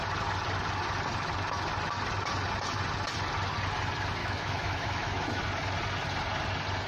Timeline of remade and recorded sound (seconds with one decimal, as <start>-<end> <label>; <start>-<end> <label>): 0.0-4.2 recorded; 4.2-5.4 remade; 5.4-6.9 recorded